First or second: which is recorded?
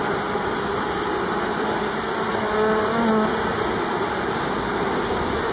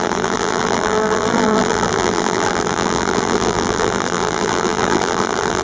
first